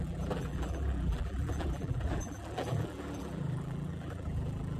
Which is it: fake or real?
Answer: fake